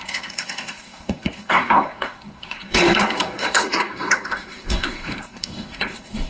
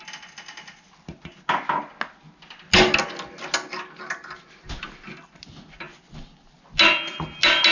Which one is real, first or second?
second